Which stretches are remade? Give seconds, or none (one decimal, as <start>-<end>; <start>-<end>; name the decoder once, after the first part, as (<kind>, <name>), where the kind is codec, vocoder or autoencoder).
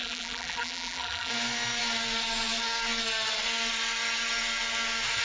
0.0-1.3 (vocoder, BigVGAN v2)